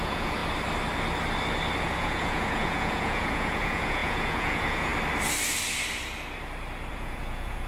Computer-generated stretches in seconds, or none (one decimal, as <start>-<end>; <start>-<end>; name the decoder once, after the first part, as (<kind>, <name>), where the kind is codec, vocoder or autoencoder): 0.0-0.4 (vocoder, Vocos); 1.8-4.9; 6.9-7.7